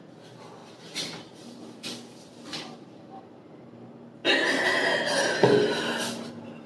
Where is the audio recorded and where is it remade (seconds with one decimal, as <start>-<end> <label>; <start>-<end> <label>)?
0.0-0.6 recorded; 0.6-3.2 remade; 3.2-6.7 recorded